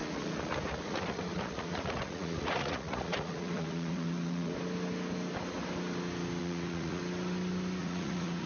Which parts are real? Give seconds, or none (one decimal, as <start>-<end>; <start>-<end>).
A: 4.5-6.4; 7.0-7.8

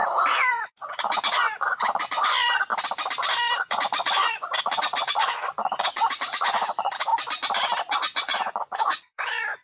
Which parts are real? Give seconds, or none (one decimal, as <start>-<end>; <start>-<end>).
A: 0.0-0.5; 2.7-3.6; 7.1-7.9

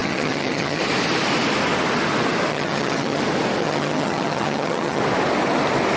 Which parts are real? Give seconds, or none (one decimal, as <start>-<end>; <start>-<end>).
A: 0.8-2.5; 3.2-3.6; 5.0-6.0

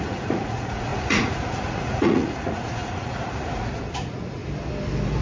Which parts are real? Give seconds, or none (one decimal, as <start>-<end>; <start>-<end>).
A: 4.4-5.2

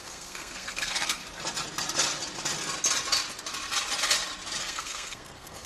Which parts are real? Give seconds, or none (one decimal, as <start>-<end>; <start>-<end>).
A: 1.2-4.6

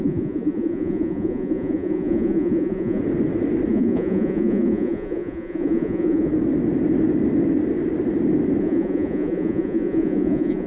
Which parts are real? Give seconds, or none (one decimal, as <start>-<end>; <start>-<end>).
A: 3.0-3.7; 6.3-8.6

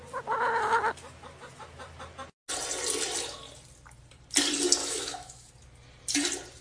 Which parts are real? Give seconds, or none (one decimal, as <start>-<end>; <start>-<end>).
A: 0.0-4.8; 5.5-6.6

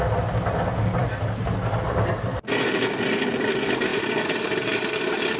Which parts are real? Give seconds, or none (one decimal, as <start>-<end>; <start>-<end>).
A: 0.0-5.4